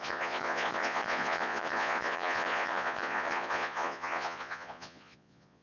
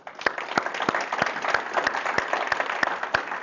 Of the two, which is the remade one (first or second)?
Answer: first